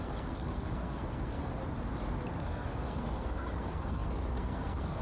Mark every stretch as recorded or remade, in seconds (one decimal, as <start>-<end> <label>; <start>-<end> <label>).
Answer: 0.0-1.5 remade; 1.5-2.4 recorded; 2.4-5.0 remade